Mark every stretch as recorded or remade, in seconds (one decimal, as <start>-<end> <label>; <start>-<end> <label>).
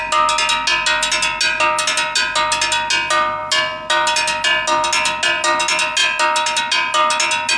0.0-7.6 recorded